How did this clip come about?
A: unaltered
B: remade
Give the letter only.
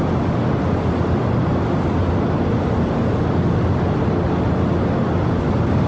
A